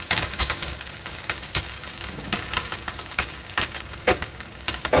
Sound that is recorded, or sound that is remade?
remade